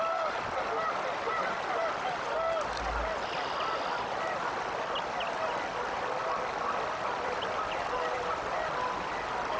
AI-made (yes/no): no